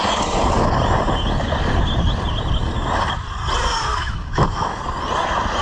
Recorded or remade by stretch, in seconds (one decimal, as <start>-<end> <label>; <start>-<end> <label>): 0.0-3.9 recorded; 3.9-4.8 remade; 4.8-5.6 recorded